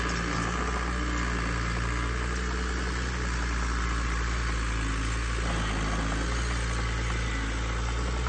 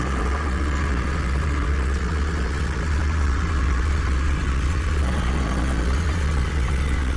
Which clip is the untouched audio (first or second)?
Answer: first